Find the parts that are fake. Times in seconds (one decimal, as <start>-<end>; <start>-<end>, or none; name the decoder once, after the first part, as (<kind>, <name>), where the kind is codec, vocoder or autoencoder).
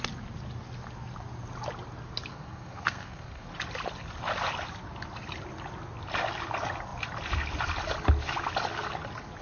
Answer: 2.3-3.5 (codec, SNAC)